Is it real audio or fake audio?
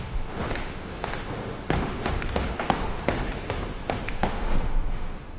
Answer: fake